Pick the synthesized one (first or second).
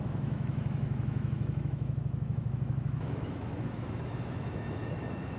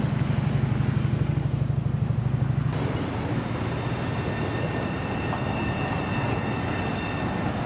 first